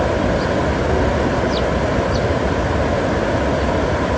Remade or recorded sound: recorded